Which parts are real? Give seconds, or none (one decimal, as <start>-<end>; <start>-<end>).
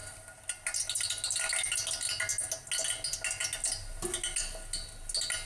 0.0-5.5